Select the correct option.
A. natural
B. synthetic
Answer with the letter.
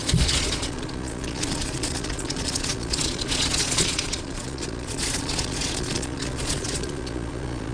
B